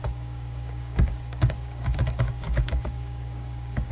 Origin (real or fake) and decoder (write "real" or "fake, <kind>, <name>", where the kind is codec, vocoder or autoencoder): fake, codec, DAC